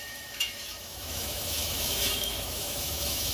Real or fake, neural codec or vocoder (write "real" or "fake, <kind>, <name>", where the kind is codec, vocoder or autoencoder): fake, autoencoder, DAC-VAE